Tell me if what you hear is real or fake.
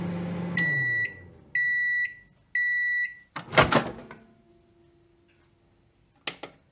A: real